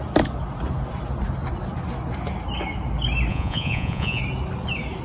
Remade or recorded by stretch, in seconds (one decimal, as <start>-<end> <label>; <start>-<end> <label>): 0.0-3.3 recorded; 3.3-4.2 remade; 4.2-5.0 recorded